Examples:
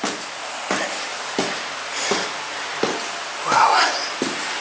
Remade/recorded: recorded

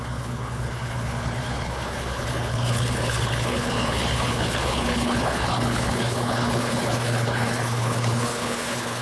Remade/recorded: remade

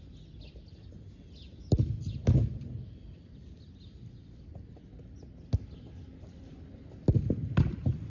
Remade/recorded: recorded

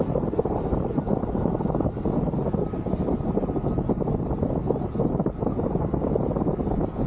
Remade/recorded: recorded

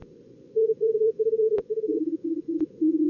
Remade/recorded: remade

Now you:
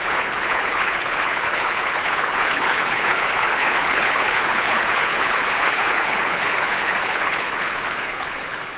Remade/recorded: remade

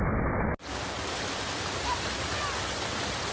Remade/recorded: recorded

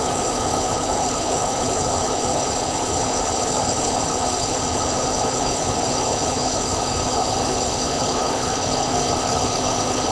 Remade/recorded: remade